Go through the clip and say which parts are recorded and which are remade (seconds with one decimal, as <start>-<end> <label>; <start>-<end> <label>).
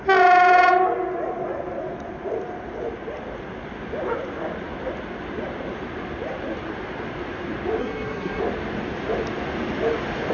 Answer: 0.0-7.8 recorded; 7.8-8.4 remade; 8.4-10.3 recorded